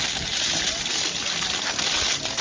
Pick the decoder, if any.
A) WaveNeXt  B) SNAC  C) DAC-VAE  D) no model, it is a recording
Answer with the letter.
D